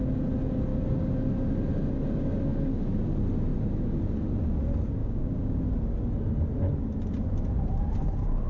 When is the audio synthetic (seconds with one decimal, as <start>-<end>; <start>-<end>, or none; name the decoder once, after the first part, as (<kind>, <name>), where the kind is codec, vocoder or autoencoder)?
5.0-5.6 (codec, DAC)